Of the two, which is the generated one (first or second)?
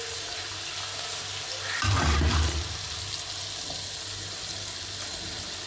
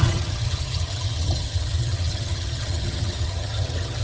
second